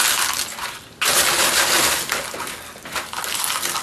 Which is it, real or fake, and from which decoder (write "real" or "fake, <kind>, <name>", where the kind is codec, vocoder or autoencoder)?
real